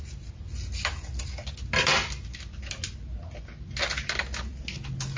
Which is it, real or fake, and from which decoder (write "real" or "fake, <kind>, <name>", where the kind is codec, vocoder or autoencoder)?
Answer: real